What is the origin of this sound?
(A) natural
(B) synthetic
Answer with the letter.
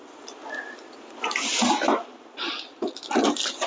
A